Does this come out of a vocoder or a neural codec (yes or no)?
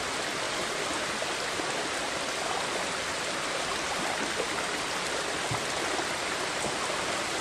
no